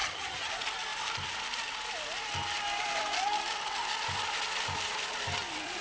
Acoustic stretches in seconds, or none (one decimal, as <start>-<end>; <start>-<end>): 0.5-5.8